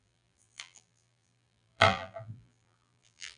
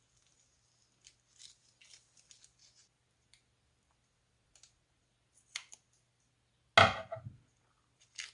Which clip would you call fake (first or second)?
first